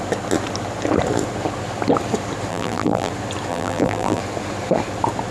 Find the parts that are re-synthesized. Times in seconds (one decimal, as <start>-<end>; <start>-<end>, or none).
2.5-3.1; 3.5-4.2